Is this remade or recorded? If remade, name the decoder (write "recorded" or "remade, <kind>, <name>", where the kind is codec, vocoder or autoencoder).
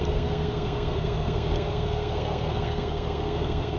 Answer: remade, codec, SNAC